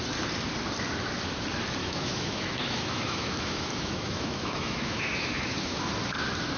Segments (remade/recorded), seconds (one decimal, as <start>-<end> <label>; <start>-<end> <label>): 0.0-1.8 recorded; 1.8-5.8 remade; 5.8-6.6 recorded